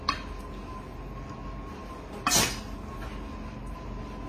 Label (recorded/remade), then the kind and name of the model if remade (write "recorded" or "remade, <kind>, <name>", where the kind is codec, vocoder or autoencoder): recorded